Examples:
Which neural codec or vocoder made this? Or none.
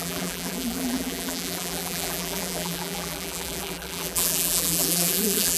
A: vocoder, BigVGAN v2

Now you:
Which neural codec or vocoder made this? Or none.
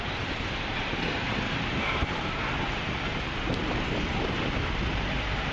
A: vocoder, BigVGAN v2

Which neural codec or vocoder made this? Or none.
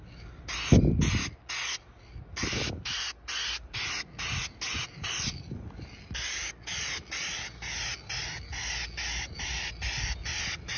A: none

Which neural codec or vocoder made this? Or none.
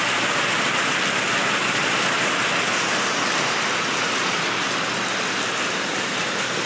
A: none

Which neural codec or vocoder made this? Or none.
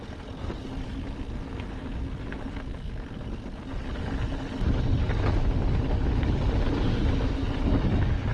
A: none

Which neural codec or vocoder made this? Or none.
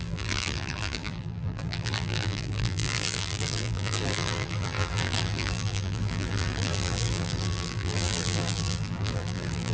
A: vocoder, BigVGAN v2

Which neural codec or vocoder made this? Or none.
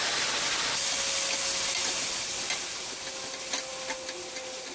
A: none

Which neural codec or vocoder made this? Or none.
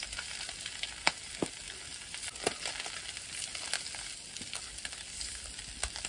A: none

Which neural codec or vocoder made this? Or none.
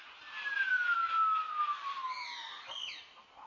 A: none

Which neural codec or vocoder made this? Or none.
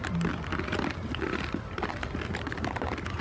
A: none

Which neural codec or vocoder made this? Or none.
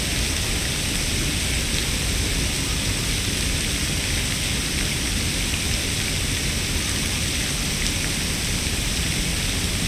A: none